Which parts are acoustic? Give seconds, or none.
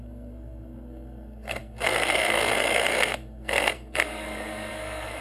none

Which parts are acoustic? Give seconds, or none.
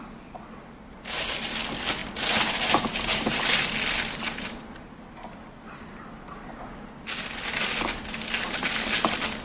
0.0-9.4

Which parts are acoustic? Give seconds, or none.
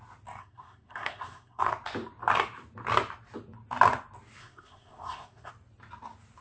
0.0-0.4; 1.7-4.4; 5.5-6.4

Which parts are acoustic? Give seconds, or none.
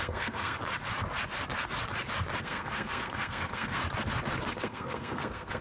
0.6-2.4; 3.8-4.5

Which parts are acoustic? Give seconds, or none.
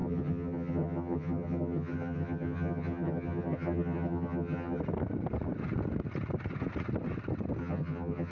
4.8-7.6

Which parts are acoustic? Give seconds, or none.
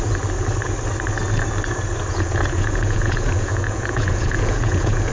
0.0-2.1